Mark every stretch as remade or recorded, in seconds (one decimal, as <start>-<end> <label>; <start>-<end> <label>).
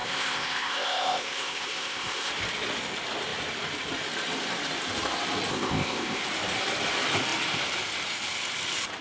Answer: 0.0-2.3 remade; 2.3-5.5 recorded; 5.5-6.2 remade; 6.2-9.0 recorded